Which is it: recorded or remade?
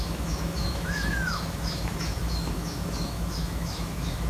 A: remade